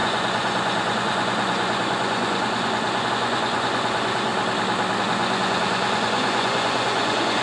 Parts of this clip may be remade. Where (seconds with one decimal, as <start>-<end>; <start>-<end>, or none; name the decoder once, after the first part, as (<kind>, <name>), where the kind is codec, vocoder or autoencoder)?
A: 0.0-4.3 (vocoder, Vocos); 5.0-7.4